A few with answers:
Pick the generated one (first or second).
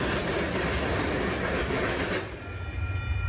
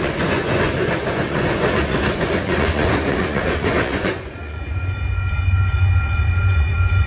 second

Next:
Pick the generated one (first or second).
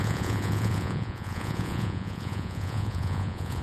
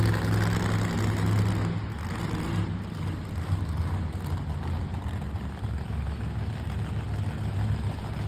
first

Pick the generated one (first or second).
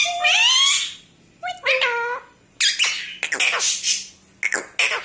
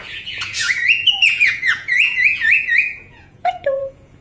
second